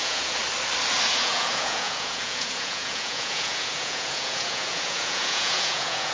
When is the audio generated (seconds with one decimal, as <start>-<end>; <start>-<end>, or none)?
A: 0.0-0.4; 1.1-6.1